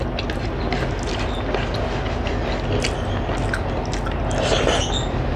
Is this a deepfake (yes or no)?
no